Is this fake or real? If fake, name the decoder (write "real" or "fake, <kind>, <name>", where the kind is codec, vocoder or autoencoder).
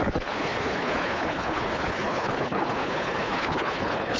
fake, codec, HILCodec